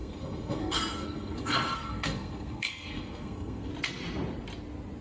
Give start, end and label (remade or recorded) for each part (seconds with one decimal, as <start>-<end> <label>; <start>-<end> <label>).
0.0-3.7 remade; 3.7-5.0 recorded